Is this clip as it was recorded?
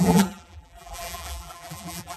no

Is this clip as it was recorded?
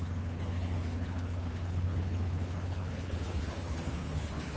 no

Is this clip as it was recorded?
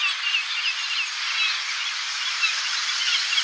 yes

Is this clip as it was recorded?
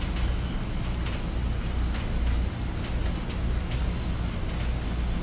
yes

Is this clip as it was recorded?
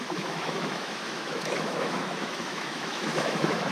no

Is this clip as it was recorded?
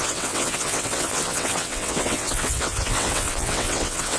no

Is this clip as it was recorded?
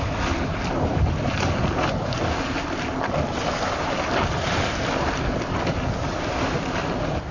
yes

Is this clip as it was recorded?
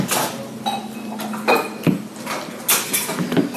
yes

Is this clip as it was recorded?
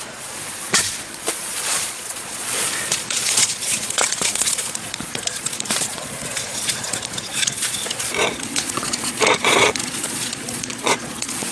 no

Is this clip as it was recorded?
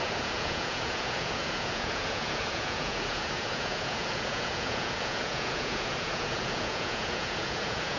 no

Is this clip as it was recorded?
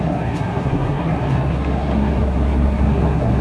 no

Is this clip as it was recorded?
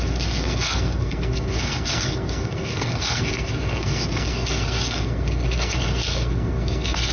no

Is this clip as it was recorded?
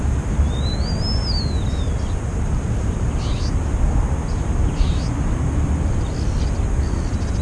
yes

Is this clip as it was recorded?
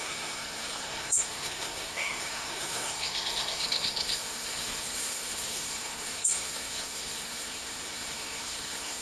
no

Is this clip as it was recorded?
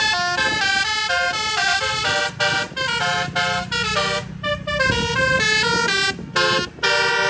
yes